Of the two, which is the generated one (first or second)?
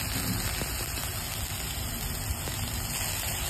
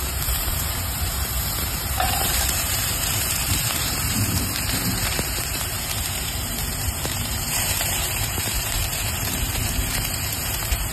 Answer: second